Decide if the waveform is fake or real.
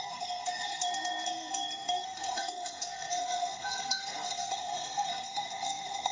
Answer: fake